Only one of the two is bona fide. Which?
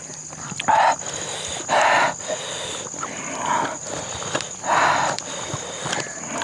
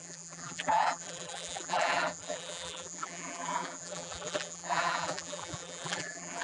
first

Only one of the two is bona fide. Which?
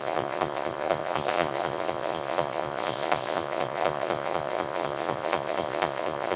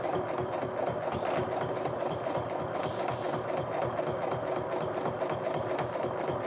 second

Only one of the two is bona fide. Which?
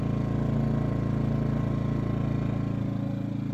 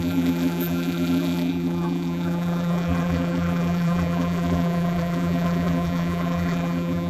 first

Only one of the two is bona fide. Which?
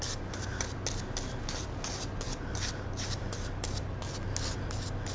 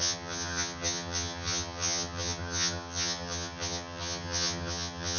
first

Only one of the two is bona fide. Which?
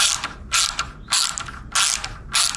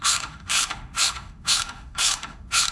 first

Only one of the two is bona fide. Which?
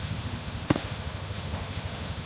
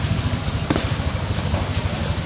second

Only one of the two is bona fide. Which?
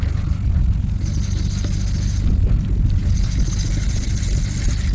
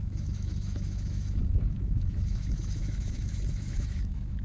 first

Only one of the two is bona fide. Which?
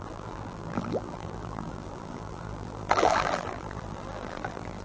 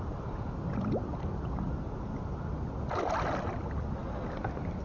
second